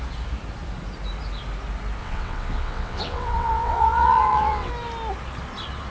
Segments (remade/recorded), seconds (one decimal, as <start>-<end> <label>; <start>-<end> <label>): 0.0-2.0 recorded; 2.0-4.7 remade; 4.7-5.9 recorded